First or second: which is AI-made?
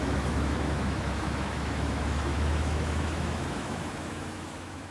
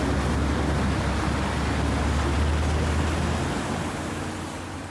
first